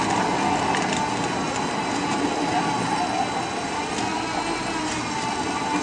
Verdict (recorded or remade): recorded